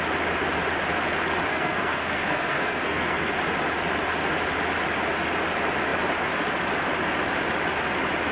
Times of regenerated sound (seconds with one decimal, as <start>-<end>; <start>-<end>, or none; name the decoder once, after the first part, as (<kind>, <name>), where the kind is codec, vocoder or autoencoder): 1.5-3.3 (codec, SNAC)